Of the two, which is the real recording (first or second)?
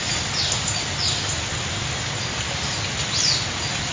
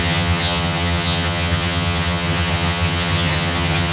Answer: first